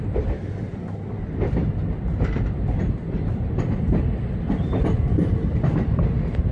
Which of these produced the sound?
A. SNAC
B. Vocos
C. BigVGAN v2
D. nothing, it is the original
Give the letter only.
C